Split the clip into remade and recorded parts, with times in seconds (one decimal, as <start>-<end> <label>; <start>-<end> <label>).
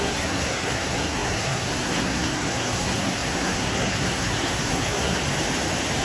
0.0-5.2 remade; 5.2-6.0 recorded